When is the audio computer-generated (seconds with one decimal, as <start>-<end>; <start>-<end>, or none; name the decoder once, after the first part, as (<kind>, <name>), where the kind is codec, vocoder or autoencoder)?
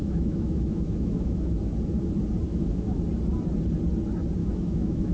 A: 0.0-1.5 (autoencoder, DAC-VAE); 2.5-3.0; 4.4-5.1